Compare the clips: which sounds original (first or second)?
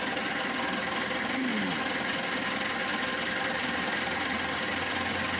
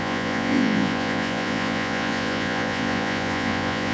first